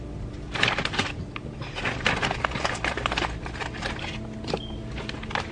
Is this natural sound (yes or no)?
yes